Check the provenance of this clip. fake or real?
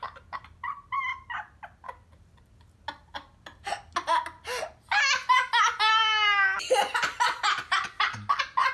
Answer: real